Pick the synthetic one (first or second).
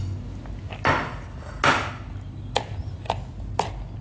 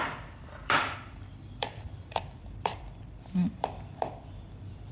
second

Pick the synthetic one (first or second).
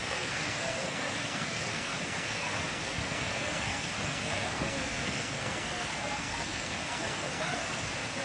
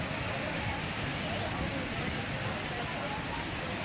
first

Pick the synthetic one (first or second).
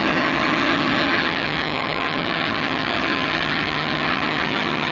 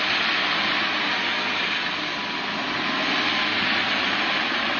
first